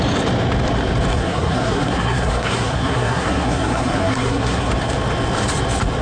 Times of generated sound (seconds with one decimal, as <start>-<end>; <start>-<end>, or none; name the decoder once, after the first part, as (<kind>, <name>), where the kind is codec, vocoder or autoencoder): 1.1-4.7 (codec, SNAC)